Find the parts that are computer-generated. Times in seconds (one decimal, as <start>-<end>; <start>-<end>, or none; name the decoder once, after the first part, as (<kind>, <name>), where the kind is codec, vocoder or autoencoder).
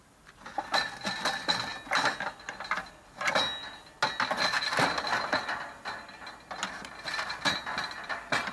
none